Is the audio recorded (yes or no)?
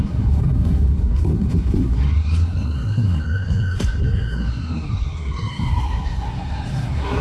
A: no